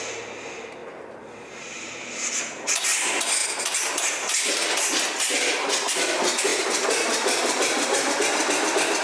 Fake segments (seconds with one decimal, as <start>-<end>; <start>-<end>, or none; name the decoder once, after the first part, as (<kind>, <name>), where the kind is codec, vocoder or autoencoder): 0.8-1.9 (vocoder, BigVGAN v2); 6.5-8.1